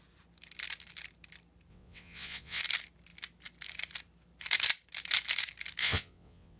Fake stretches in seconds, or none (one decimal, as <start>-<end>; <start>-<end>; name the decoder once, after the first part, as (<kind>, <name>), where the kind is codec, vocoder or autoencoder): 1.7-2.6 (vocoder, WaveNeXt); 5.8-6.6